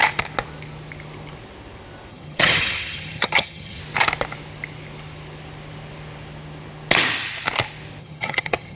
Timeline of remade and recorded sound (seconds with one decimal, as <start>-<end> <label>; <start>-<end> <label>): 0.0-2.1 recorded; 2.1-3.8 remade; 3.8-8.0 recorded; 8.0-8.8 remade